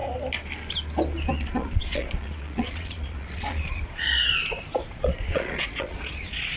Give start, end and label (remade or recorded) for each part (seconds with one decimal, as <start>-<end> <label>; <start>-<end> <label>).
0.0-1.3 recorded; 1.3-4.3 remade; 4.3-4.9 recorded; 4.9-6.6 remade